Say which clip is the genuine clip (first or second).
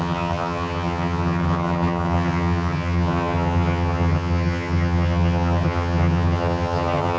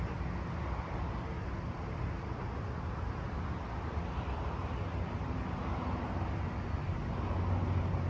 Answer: second